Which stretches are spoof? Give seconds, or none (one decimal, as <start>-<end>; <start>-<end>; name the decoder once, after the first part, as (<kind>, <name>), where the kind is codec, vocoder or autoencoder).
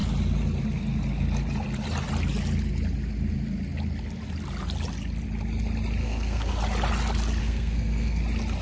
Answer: 6.0-6.6 (codec, SNAC); 7.4-8.2